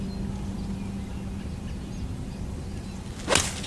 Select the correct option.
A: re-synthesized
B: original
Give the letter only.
B